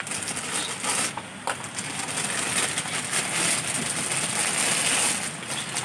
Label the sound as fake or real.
real